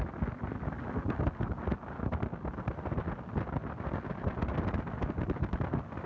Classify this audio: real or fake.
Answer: real